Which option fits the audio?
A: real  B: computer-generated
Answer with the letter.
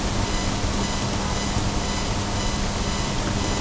A